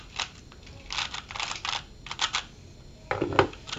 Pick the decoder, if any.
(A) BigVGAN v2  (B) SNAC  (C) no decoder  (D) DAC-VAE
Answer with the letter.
C